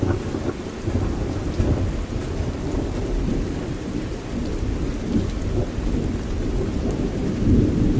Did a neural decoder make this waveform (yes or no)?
no